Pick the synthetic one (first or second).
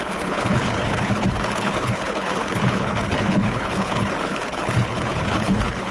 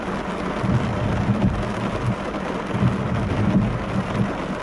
first